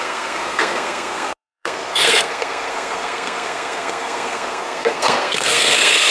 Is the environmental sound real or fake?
fake